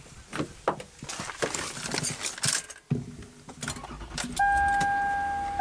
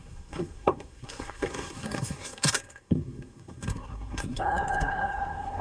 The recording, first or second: first